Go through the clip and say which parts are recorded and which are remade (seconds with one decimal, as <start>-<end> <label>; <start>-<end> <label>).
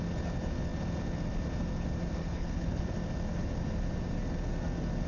0.0-2.2 recorded; 2.2-2.8 remade; 2.8-5.1 recorded